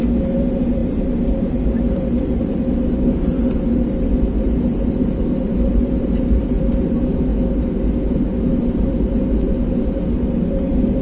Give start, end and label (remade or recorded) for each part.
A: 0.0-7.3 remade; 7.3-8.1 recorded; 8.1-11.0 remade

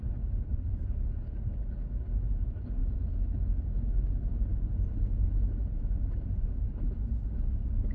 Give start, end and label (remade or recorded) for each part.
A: 0.0-0.8 remade; 0.8-4.5 recorded; 4.5-6.9 remade; 6.9-7.9 recorded